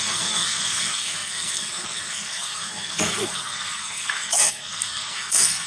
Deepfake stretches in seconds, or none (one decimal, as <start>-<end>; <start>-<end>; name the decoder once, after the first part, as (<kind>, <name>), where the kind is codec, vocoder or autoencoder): 0.0-5.7 (codec, SNAC)

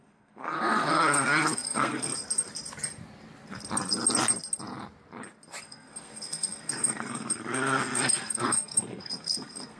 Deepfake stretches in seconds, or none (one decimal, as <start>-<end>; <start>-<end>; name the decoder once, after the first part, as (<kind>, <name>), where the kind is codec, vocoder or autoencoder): 0.0-2.1 (codec, SNAC); 5.6-9.8